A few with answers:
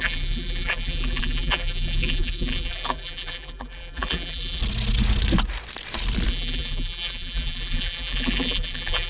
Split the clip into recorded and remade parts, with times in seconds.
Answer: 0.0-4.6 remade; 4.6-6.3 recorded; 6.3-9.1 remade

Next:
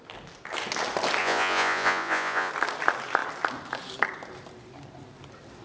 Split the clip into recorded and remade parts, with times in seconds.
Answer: 0.0-1.2 recorded; 1.2-2.5 remade; 2.5-5.6 recorded

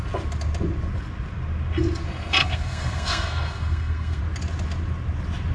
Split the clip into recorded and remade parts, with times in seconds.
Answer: 0.0-2.4 recorded; 2.4-4.2 remade; 4.2-5.5 recorded

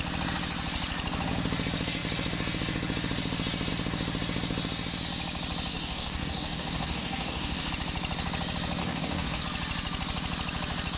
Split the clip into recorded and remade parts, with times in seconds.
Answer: 0.0-5.7 recorded; 5.7-7.7 remade; 7.7-8.8 recorded; 8.8-9.4 remade; 9.4-11.0 recorded

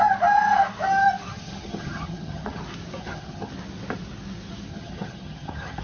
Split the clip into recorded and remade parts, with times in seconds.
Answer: 0.0-1.3 recorded; 1.3-2.6 remade; 2.6-3.0 recorded; 3.0-3.5 remade; 3.5-4.7 recorded; 4.7-5.8 remade

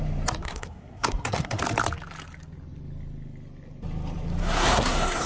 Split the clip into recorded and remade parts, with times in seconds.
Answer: 0.0-0.4 recorded; 0.4-1.6 remade; 1.6-4.4 recorded; 4.4-5.3 remade

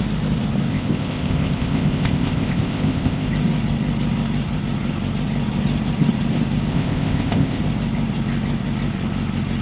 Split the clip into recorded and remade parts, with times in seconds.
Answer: 0.0-0.7 recorded; 0.7-3.3 remade; 3.3-6.7 recorded; 6.7-7.6 remade; 7.6-9.6 recorded

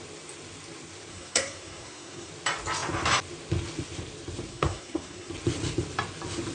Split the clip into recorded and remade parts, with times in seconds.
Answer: 0.0-1.1 recorded; 1.1-2.3 remade; 2.3-4.5 recorded; 4.5-5.3 remade; 5.3-6.5 recorded